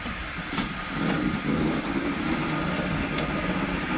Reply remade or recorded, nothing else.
recorded